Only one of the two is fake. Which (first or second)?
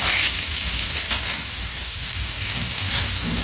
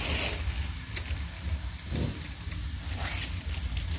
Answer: first